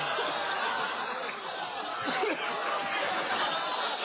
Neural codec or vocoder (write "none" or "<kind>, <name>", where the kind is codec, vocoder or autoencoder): none